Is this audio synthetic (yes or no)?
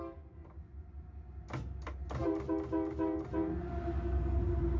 no